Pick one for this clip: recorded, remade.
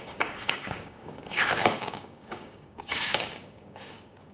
remade